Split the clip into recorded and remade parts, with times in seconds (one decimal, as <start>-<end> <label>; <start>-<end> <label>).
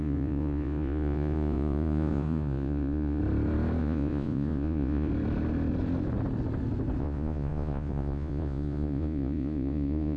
0.0-3.2 remade; 3.2-3.8 recorded; 3.8-5.1 remade; 5.1-7.0 recorded; 7.0-10.2 remade